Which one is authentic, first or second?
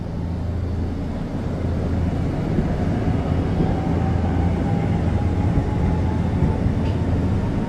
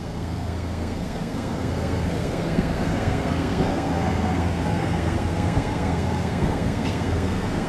first